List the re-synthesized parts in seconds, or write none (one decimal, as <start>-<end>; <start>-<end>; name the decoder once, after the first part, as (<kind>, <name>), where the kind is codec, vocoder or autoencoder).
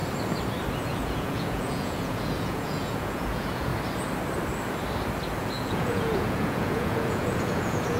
0.8-3.7 (vocoder, Vocos); 5.4-8.0